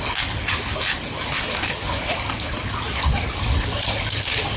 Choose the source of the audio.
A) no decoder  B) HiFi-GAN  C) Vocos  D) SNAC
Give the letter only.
A